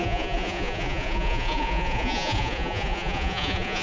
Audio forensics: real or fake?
fake